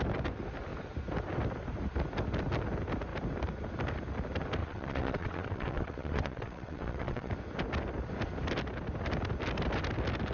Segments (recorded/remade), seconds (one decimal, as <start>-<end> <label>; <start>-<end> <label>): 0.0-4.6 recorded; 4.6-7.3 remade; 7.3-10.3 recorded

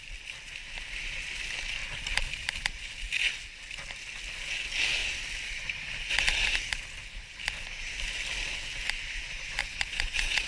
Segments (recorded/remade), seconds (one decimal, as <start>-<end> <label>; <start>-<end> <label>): 0.0-9.6 recorded; 9.6-10.5 remade

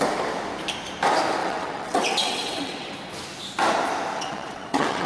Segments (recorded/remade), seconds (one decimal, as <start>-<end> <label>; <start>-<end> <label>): 0.0-1.4 recorded; 1.4-2.9 remade; 2.9-4.1 recorded; 4.1-5.1 remade